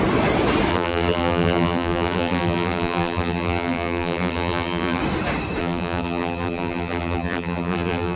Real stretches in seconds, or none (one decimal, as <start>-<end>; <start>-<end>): 0.0-0.7; 5.0-5.6